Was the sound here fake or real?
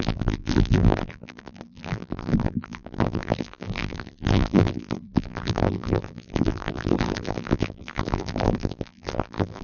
fake